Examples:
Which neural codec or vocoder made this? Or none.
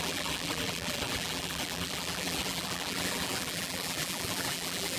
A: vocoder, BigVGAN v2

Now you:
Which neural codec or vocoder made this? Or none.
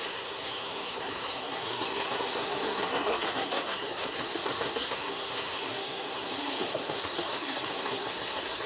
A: codec, SNAC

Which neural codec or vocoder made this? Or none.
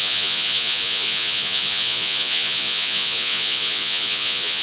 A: vocoder, Vocos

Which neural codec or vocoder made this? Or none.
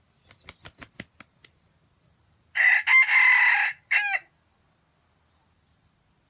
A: none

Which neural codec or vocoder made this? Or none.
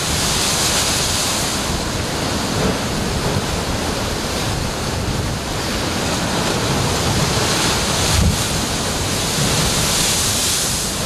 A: none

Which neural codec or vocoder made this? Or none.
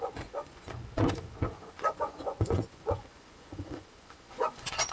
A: vocoder, Vocos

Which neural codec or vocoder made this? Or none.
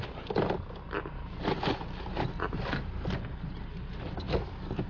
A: none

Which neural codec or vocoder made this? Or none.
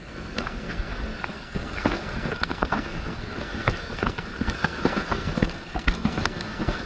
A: codec, SNAC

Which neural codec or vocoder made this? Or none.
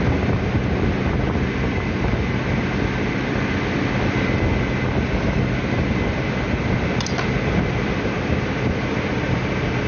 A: none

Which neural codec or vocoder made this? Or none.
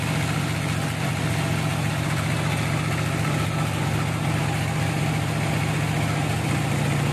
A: none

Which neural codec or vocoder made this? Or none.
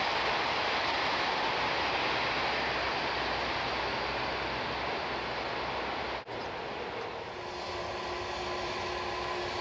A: none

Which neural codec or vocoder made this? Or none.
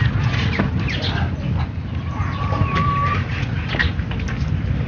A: none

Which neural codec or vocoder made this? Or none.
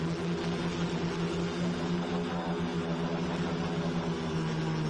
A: none